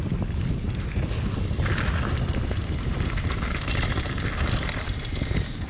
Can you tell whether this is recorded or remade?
recorded